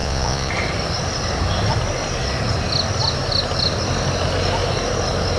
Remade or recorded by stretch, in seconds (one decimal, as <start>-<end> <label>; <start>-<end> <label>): 0.0-0.5 remade; 0.5-5.4 recorded